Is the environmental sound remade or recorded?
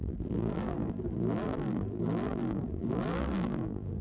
remade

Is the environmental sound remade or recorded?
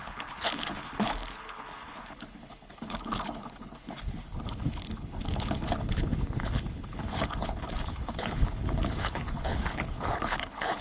remade